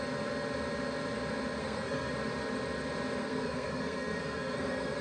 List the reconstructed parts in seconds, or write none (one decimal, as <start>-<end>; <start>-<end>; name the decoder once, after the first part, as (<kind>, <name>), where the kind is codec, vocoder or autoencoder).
1.6-2.1 (codec, SNAC); 3.2-5.0

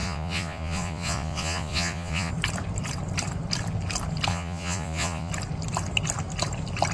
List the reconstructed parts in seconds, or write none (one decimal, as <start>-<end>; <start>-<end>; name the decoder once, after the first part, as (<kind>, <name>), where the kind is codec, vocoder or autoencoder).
0.0-2.3 (vocoder, Vocos); 4.3-5.3

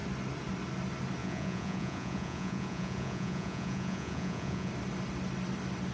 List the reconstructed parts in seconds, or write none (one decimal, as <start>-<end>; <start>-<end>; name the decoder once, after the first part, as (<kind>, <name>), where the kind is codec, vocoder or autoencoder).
1.2-4.7 (vocoder, Vocos)

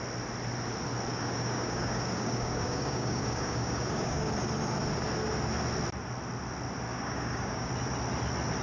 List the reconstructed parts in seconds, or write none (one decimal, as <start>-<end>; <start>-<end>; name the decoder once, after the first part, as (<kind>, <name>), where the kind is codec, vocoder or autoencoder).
1.1-4.3 (codec, DAC); 6.9-7.7

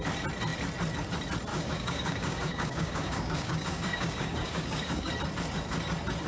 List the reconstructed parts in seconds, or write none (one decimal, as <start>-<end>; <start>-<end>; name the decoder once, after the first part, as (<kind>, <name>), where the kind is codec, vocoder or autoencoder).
1.5-5.1 (codec, DAC)

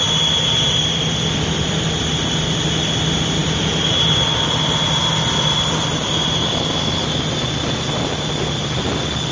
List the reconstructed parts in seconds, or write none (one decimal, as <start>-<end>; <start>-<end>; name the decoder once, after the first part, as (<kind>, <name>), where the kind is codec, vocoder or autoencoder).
none

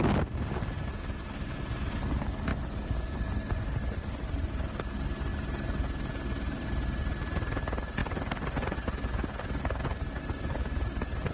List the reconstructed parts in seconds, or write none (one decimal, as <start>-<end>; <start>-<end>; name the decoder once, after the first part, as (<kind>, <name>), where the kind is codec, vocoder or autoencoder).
none